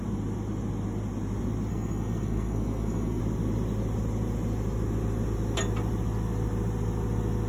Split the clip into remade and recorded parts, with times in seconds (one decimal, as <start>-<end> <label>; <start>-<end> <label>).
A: 0.0-1.7 recorded; 1.7-3.2 remade; 3.2-7.5 recorded